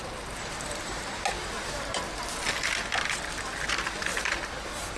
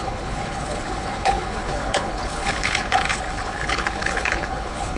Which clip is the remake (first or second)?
second